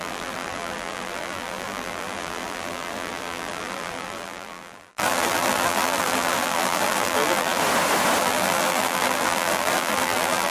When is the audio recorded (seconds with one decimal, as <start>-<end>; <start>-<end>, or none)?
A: 7.6-8.2